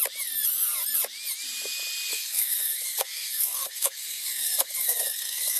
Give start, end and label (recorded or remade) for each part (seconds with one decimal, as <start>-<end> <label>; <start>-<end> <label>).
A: 0.0-2.1 recorded; 2.1-5.6 remade

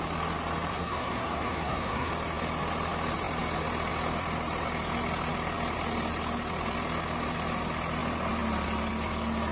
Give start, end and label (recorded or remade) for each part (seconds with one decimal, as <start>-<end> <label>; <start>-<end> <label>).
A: 0.0-0.7 recorded; 0.7-2.1 remade; 2.1-9.5 recorded

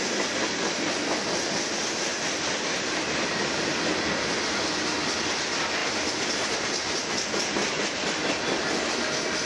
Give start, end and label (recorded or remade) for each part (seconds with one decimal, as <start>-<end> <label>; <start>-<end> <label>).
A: 0.0-9.5 recorded

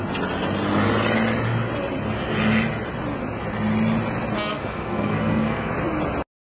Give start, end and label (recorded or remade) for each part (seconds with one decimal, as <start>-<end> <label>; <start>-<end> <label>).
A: 0.0-4.5 recorded; 4.5-5.7 remade; 5.7-6.4 recorded

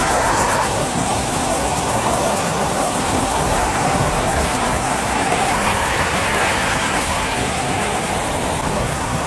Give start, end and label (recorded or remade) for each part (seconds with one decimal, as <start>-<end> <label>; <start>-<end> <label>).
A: 0.0-8.1 remade; 8.1-8.7 recorded; 8.7-9.3 remade

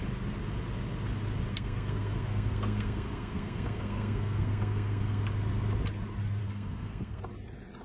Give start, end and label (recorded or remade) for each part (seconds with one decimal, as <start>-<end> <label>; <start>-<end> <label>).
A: 0.0-1.5 recorded; 1.5-5.2 remade; 5.2-6.4 recorded; 6.4-7.2 remade; 7.2-7.8 recorded